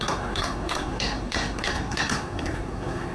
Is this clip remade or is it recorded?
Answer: remade